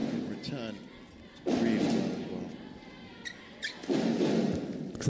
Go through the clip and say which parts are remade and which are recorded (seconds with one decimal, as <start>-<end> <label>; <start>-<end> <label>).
0.0-5.1 recorded